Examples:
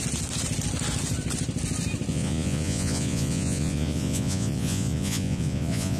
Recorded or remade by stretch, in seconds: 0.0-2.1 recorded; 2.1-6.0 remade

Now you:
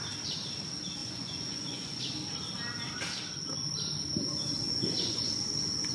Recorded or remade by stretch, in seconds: 0.0-1.0 recorded; 1.0-2.0 remade; 2.0-4.6 recorded; 4.6-5.3 remade; 5.3-5.9 recorded

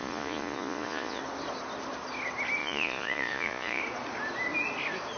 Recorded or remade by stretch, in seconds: 0.0-1.2 remade; 1.2-2.6 recorded; 2.6-3.8 remade; 3.8-5.2 recorded

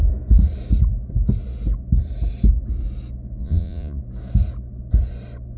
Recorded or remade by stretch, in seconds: 0.0-3.4 recorded; 3.4-4.0 remade; 4.0-5.6 recorded